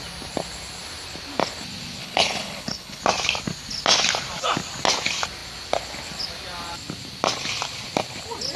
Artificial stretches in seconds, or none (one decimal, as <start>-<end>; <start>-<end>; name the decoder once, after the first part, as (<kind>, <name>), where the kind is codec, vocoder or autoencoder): 2.0-3.0 (codec, HILCodec)